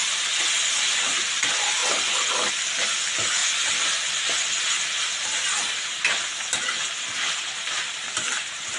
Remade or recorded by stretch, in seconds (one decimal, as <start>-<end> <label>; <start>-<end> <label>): 0.0-0.7 recorded; 0.7-3.4 remade; 3.4-6.9 recorded; 6.9-8.8 remade